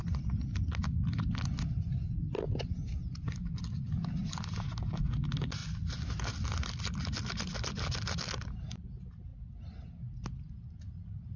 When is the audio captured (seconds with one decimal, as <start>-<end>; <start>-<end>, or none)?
0.0-11.4